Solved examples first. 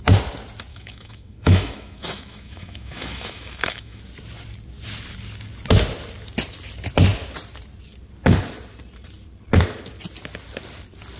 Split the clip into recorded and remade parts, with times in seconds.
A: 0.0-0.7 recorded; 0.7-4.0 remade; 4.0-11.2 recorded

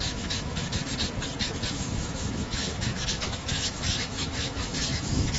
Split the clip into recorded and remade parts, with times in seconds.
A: 0.0-0.8 remade; 0.8-1.7 recorded; 1.7-5.4 remade

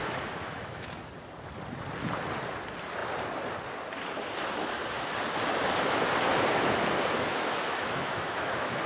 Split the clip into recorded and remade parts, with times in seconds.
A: 0.0-1.1 remade; 1.1-7.3 recorded; 7.3-8.9 remade

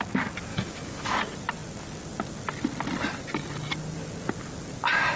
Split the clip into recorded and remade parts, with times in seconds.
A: 0.0-0.5 recorded; 0.5-1.2 remade; 1.2-5.2 recorded

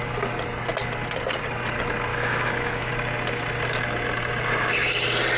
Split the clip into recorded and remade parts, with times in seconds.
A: 0.0-2.1 recorded; 2.1-2.9 remade; 2.9-5.4 recorded